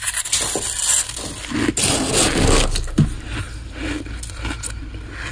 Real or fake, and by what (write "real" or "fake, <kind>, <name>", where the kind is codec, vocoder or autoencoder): real